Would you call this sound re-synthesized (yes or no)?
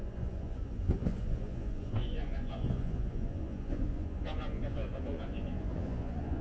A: yes